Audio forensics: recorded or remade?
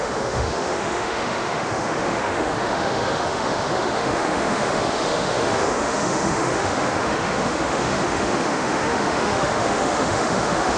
remade